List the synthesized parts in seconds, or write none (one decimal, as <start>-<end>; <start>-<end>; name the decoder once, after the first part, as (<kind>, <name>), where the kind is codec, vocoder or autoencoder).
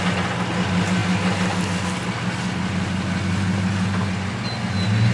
none